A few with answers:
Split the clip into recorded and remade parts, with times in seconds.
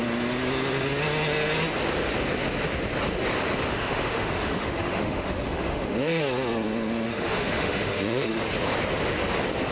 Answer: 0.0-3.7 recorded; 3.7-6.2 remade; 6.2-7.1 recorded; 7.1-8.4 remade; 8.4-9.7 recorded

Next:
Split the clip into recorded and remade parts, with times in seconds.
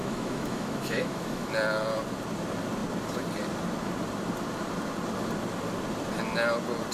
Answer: 0.0-1.5 remade; 1.5-6.9 recorded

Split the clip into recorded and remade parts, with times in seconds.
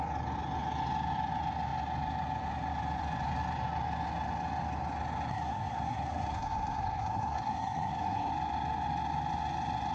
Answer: 0.0-5.3 recorded; 5.3-8.3 remade; 8.3-9.9 recorded